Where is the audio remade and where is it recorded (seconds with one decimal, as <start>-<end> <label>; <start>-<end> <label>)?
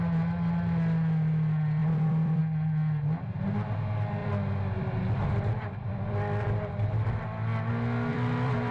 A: 0.0-1.8 recorded; 1.8-2.4 remade; 2.4-4.2 recorded; 4.2-7.7 remade; 7.7-8.1 recorded; 8.1-8.7 remade